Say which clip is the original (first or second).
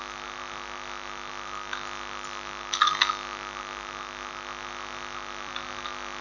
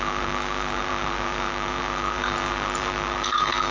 first